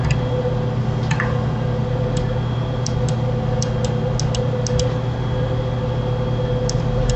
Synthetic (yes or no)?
no